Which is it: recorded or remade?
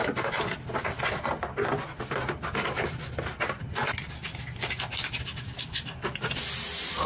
recorded